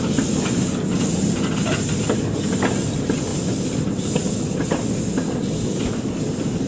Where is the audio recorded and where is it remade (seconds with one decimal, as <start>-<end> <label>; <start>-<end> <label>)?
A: 0.0-6.7 recorded